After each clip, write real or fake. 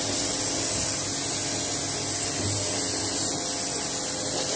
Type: real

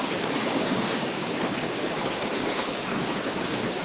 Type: fake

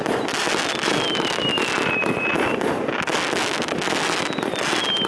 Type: real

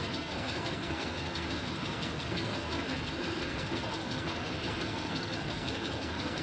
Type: fake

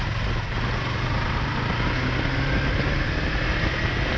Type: real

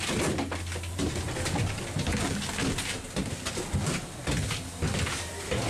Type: real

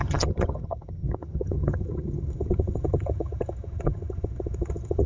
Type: fake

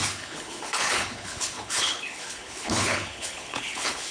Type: fake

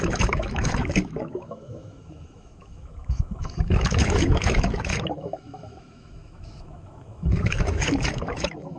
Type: fake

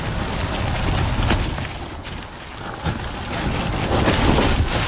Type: real